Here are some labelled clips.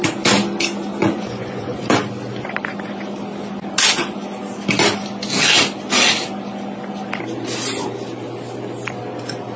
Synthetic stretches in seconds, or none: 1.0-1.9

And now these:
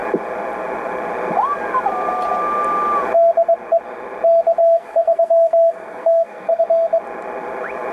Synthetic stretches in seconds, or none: 4.6-6.6